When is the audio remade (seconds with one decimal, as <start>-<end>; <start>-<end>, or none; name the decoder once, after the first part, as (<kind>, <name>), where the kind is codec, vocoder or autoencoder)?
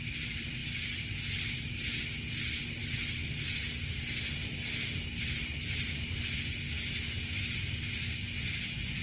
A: none